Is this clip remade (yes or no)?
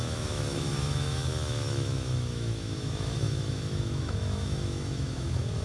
yes